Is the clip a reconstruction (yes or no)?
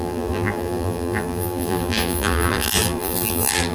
yes